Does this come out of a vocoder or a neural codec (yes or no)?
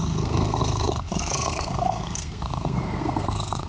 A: yes